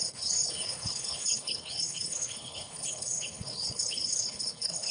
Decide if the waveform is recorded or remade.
remade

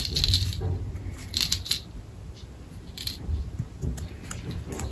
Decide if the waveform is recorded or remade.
recorded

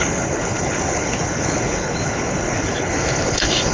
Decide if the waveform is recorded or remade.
remade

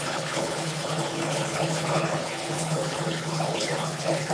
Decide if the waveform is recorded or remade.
remade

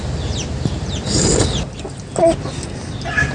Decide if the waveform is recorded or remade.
recorded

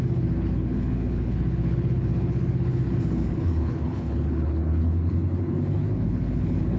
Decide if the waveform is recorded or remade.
remade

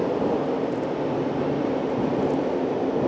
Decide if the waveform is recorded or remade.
recorded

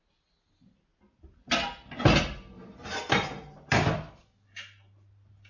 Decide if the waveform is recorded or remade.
recorded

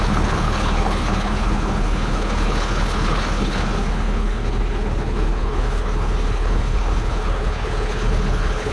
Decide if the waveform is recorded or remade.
remade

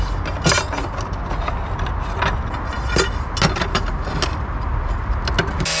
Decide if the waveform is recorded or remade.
recorded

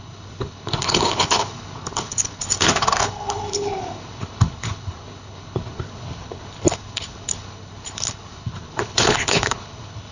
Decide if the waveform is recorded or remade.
remade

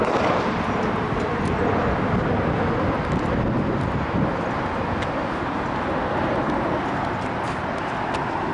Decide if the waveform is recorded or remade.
recorded